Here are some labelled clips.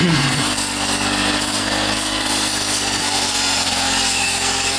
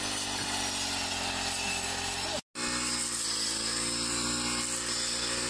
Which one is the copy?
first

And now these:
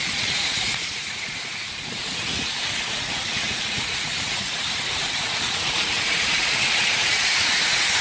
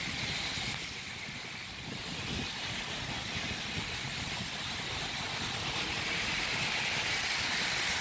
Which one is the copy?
first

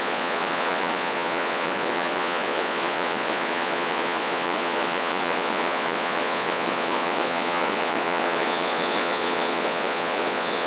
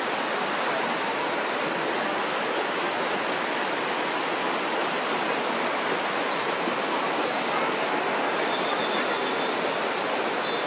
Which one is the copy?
first